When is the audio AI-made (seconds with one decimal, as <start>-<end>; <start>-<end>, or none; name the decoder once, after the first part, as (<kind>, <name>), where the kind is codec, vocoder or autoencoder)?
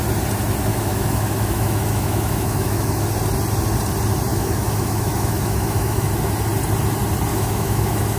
0.7-3.1 (autoencoder, DAC-VAE); 4.3-6.1; 7.3-8.2